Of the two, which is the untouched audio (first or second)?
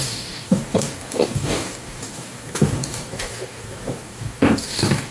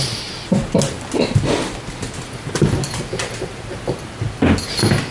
second